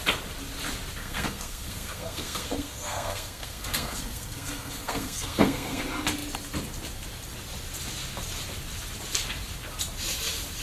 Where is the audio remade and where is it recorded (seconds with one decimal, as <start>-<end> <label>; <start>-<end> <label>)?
0.0-1.0 recorded; 1.0-5.8 remade; 5.8-10.6 recorded